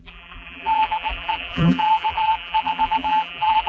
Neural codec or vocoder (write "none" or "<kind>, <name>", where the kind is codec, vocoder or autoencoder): vocoder, BigVGAN v2